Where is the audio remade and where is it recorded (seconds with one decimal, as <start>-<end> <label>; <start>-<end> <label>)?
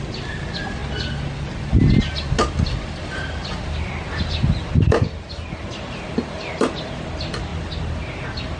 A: 0.0-8.6 recorded